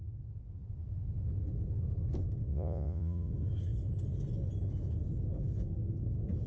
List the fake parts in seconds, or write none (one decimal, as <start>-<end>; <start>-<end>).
2.5-3.3